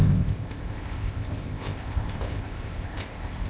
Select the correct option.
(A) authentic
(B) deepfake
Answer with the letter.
B